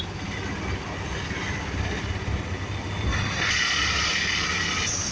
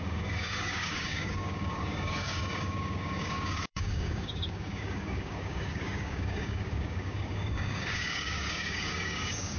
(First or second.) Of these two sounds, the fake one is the second